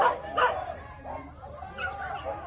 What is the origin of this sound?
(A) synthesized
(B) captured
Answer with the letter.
B